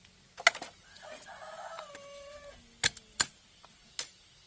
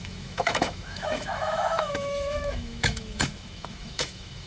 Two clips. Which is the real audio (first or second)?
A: first